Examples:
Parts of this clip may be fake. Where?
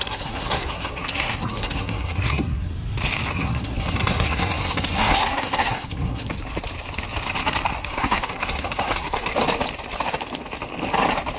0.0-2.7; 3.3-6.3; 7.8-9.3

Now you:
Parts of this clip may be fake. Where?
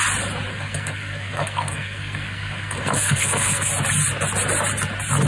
0.5-3.7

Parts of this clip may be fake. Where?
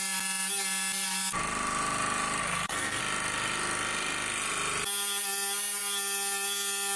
2.4-3.0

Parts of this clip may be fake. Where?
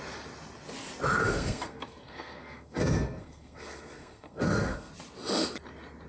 1.2-4.9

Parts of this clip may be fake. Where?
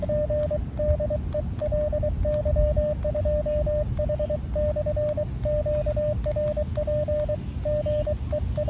none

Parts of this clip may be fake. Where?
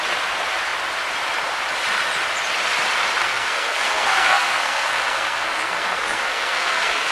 3.2-7.1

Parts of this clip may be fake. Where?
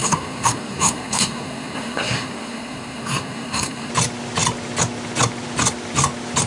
0.0-3.9